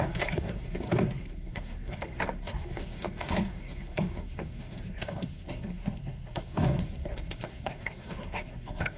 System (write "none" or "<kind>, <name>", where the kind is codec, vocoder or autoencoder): codec, SNAC